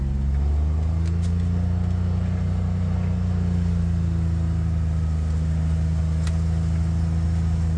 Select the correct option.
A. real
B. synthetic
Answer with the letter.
A